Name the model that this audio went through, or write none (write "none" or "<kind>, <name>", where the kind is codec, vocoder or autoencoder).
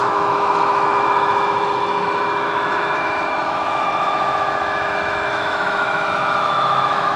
autoencoder, DAC-VAE